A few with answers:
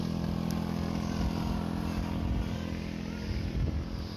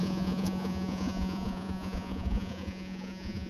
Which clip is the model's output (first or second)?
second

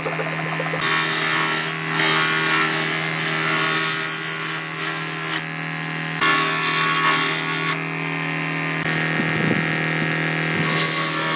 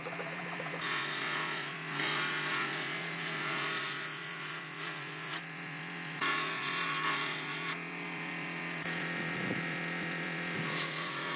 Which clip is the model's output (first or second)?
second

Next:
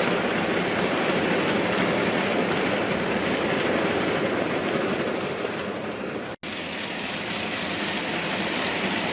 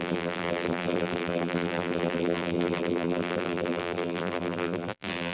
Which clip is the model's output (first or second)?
second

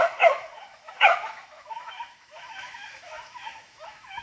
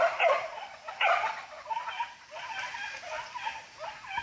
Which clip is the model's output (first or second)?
first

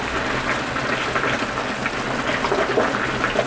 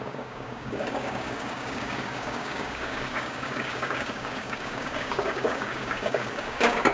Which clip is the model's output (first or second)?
second